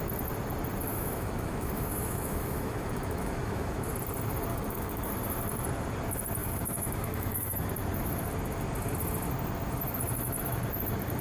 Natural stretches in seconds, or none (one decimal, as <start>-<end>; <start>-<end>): 0.0-0.9; 3.9-4.5; 5.1-6.4; 7.7-11.2